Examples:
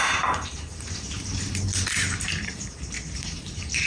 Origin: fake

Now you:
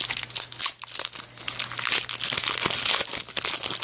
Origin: real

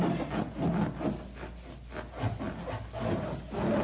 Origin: real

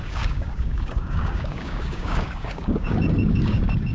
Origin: fake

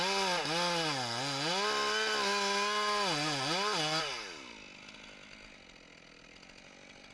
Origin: real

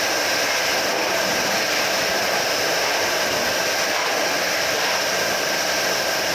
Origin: real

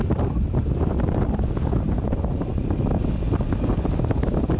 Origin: real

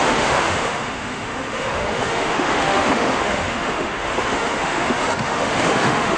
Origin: fake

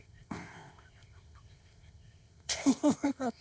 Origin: fake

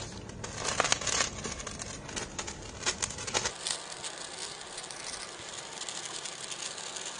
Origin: real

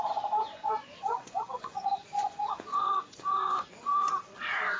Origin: fake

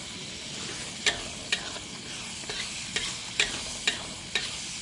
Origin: real